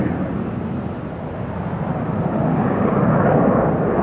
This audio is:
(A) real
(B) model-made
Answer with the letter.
A